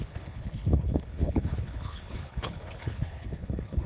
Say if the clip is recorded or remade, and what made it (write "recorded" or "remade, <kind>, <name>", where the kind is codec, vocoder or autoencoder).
remade, codec, HILCodec